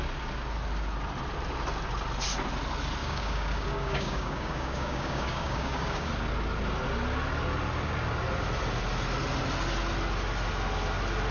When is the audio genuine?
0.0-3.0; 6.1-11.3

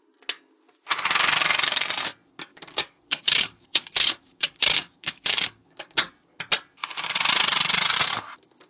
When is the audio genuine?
0.0-2.5; 6.1-8.7